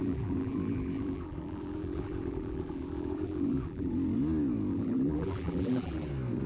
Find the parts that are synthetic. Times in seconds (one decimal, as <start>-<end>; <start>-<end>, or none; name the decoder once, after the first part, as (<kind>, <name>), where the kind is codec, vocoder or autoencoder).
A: 0.0-3.9 (vocoder, BigVGAN v2); 4.7-6.1